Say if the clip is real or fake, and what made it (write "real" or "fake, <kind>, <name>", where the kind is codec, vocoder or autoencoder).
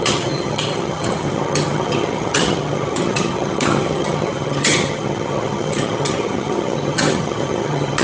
fake, vocoder, HiFi-GAN